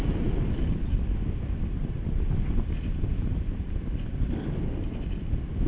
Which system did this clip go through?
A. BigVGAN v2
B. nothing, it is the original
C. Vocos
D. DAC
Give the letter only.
B